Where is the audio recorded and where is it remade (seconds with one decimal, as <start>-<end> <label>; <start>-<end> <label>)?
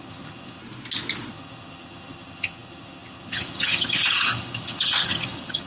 0.0-0.6 remade; 0.6-1.3 recorded; 1.3-5.7 remade